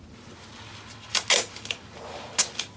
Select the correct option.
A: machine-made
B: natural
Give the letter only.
B